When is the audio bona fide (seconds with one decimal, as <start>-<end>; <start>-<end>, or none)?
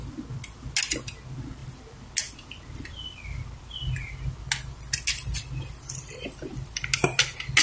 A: 0.0-7.6